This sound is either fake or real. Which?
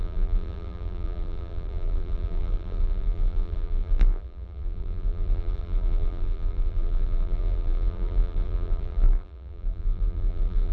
fake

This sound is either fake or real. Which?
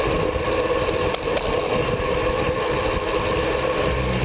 real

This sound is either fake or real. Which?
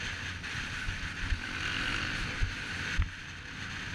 real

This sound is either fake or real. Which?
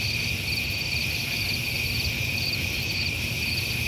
fake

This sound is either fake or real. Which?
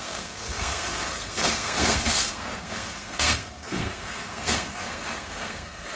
fake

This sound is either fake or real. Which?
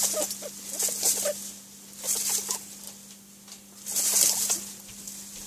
real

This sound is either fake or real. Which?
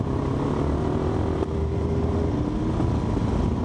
real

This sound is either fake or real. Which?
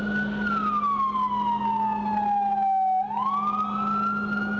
real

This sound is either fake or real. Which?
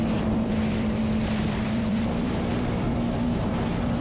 fake